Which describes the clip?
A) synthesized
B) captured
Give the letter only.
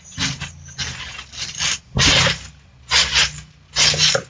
B